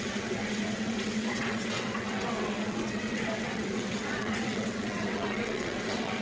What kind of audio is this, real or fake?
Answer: fake